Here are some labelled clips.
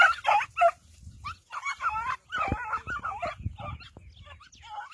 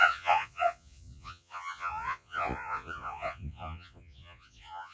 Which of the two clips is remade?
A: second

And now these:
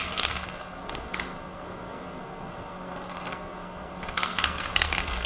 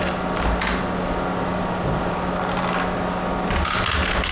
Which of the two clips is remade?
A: first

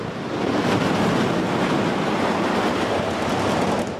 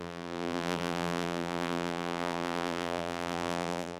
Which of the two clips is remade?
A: second